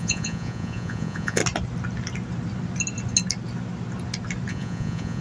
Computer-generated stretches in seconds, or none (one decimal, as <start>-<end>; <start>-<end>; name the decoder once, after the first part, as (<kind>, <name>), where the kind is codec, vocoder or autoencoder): 0.0-1.4 (vocoder, Vocos); 4.5-5.2